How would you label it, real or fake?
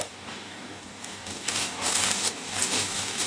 fake